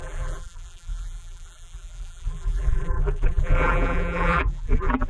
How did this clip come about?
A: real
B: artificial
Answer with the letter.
B